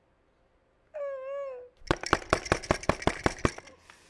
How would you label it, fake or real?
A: real